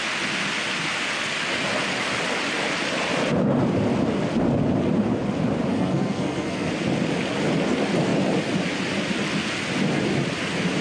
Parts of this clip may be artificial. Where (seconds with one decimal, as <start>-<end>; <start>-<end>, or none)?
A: 5.7-6.7